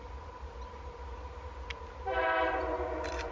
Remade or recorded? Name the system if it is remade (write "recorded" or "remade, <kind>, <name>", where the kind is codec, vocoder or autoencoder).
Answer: recorded